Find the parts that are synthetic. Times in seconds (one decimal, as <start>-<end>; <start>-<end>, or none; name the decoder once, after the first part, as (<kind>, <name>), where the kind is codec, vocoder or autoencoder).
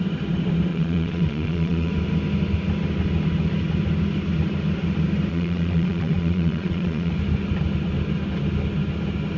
0.7-1.9 (vocoder, Vocos); 5.3-7.1